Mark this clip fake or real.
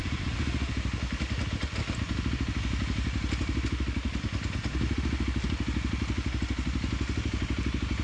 real